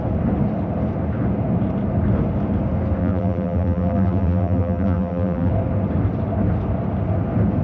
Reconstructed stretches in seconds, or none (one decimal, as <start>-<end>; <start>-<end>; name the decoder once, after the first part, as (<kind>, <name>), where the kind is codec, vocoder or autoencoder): 3.0-5.5 (vocoder, BigVGAN v2)